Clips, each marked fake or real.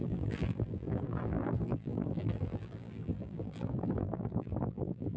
fake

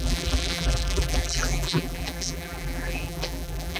fake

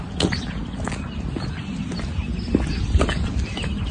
real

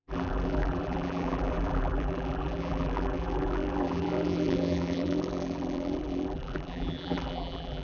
fake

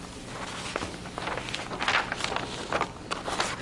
real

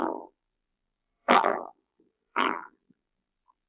fake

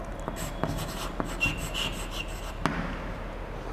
real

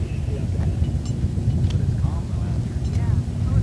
real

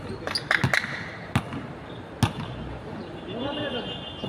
real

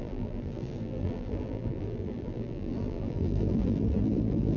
fake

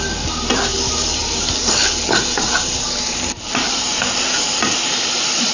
fake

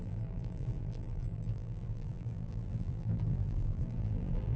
fake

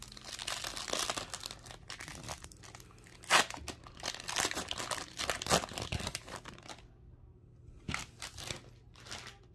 real